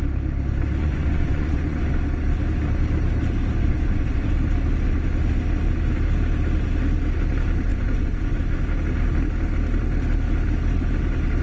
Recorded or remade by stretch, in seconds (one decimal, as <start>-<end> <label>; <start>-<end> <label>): 0.0-0.8 recorded; 0.8-1.8 remade; 1.8-3.6 recorded; 3.6-4.3 remade; 4.3-7.7 recorded; 7.7-8.4 remade; 8.4-11.4 recorded